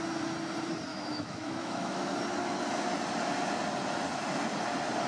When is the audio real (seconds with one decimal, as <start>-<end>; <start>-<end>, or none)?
0.0-0.9; 2.1-5.1